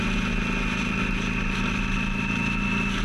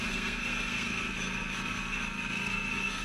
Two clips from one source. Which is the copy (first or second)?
second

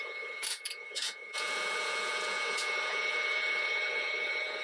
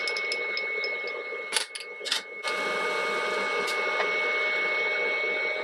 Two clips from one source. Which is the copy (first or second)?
first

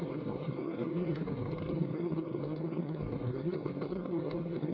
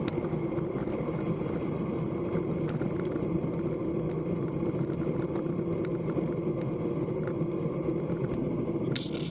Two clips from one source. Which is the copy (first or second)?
first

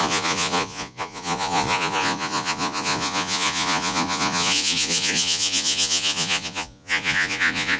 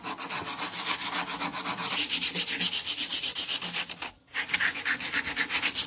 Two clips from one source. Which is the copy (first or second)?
first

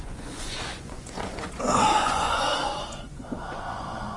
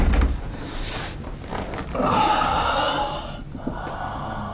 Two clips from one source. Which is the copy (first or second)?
first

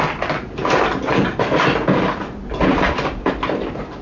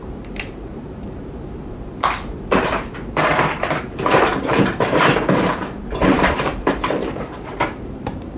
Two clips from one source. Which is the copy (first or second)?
second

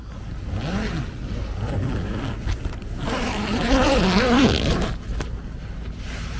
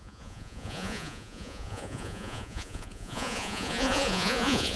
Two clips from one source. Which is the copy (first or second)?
second